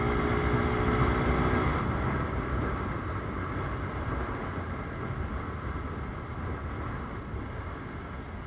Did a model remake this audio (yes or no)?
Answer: no